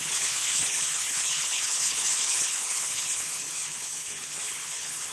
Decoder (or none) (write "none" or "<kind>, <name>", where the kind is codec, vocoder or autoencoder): codec, HILCodec